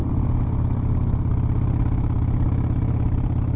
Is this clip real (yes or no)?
yes